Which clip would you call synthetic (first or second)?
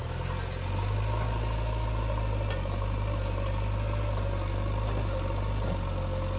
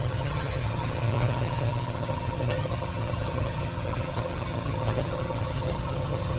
second